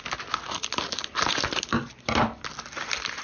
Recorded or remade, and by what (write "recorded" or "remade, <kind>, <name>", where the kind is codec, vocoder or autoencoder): recorded